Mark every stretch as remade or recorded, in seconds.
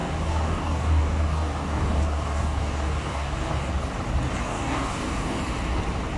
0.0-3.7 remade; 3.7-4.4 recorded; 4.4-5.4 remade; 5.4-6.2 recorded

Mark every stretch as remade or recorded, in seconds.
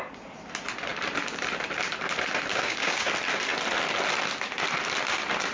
0.0-2.5 recorded; 2.5-3.1 remade; 3.1-5.5 recorded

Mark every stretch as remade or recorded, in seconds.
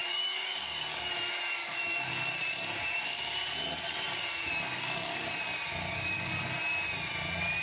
0.0-1.1 remade; 1.1-1.6 recorded; 1.6-2.1 remade; 2.1-5.9 recorded; 5.9-6.4 remade; 6.4-7.6 recorded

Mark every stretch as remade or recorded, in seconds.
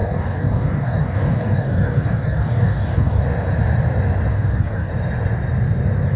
0.0-3.2 remade; 3.2-4.3 recorded; 4.3-4.9 remade; 4.9-6.2 recorded